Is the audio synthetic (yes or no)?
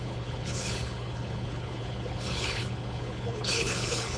yes